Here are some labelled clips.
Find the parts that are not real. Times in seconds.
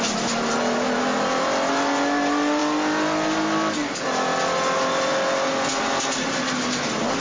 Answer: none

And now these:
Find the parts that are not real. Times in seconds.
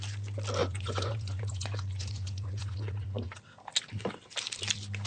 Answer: 0.6-3.4 (vocoder, Vocos)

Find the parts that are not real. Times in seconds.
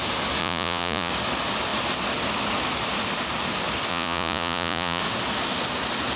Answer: 0.4-1.1 (vocoder, Vocos); 3.9-5.0